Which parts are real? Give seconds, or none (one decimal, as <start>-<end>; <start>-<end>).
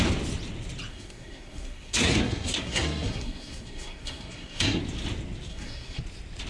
0.0-0.9; 4.8-5.5; 6.0-6.5